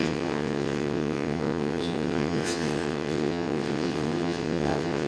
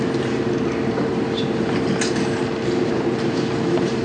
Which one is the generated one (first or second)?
first